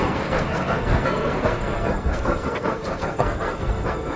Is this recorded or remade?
remade